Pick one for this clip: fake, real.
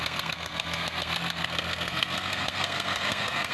fake